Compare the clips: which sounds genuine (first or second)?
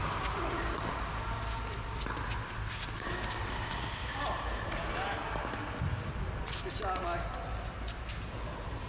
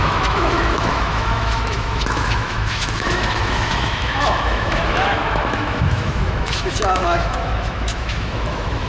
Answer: first